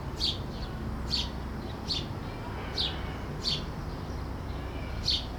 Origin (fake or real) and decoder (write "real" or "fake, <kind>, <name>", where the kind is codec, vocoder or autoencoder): real